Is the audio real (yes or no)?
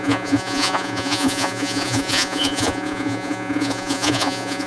no